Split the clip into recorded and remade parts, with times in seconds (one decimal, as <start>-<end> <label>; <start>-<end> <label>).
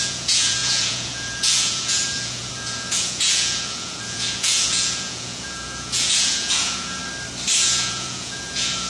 0.0-7.0 remade; 7.0-7.6 recorded; 7.6-8.9 remade